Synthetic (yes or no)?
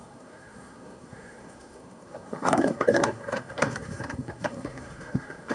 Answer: yes